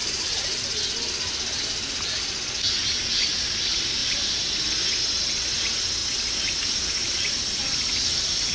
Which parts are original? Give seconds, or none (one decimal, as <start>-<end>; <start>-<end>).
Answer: 1.6-6.0